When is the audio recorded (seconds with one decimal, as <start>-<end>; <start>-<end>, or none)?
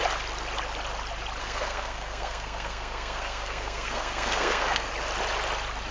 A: 0.0-1.4; 4.9-5.9